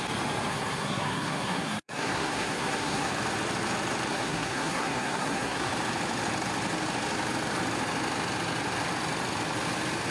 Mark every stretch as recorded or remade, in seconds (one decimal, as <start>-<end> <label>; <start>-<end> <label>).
0.0-0.5 recorded; 0.5-3.1 remade; 3.1-4.1 recorded; 4.1-5.7 remade; 5.7-10.1 recorded